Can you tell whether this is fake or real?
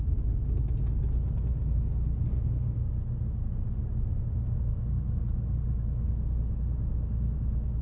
real